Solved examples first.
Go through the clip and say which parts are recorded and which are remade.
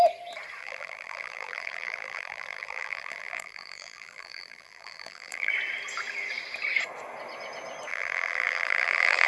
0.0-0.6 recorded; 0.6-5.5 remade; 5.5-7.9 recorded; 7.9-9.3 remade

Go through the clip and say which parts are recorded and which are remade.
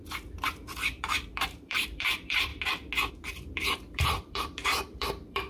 0.0-2.5 remade; 2.5-3.1 recorded; 3.1-5.5 remade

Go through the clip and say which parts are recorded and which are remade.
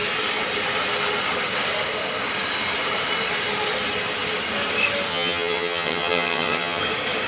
0.0-5.1 recorded; 5.1-6.8 remade; 6.8-7.3 recorded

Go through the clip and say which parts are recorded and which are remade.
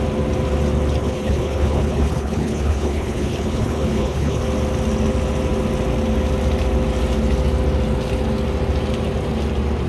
0.0-1.0 recorded; 1.0-4.4 remade; 4.4-9.9 recorded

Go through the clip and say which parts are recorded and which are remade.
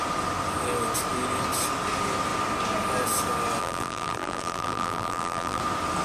0.0-3.6 recorded; 3.6-5.6 remade; 5.6-6.0 recorded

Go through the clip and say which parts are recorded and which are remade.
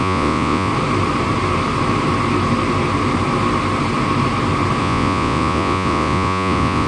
0.0-0.7 remade; 0.7-4.8 recorded; 4.8-6.9 remade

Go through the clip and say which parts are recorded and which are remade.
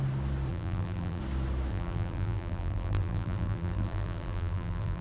0.0-0.5 recorded; 0.5-1.2 remade; 1.2-1.7 recorded; 1.7-5.0 remade